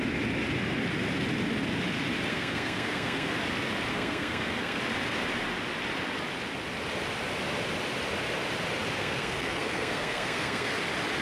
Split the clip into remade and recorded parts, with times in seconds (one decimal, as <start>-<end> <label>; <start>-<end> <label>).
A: 0.0-2.3 recorded; 2.3-3.3 remade; 3.3-3.9 recorded; 3.9-4.8 remade; 4.8-9.0 recorded; 9.0-10.7 remade; 10.7-11.2 recorded